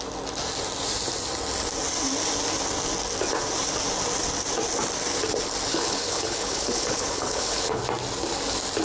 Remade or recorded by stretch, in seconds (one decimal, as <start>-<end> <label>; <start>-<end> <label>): 0.0-5.7 recorded; 5.7-7.8 remade; 7.8-8.8 recorded